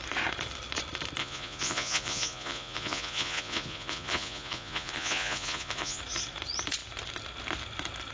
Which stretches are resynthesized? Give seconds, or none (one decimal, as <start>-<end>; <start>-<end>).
1.2-6.0